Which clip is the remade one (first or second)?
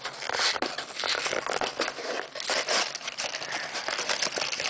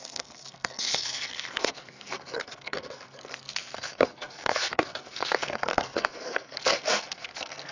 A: second